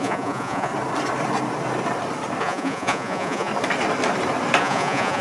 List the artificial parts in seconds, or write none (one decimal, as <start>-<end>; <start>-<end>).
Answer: 0.0-0.7; 2.4-3.5; 4.6-5.2